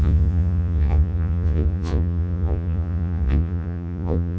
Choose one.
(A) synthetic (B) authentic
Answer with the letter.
A